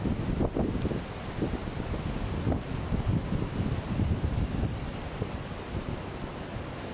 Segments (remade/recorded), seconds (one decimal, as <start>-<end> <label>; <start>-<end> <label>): 0.0-6.9 recorded